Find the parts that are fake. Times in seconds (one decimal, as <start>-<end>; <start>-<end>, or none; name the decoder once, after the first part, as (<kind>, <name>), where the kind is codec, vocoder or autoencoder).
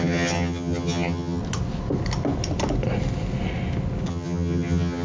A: 0.0-1.4 (vocoder, HiFi-GAN); 4.1-5.0